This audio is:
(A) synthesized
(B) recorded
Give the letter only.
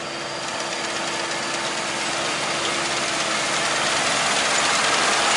B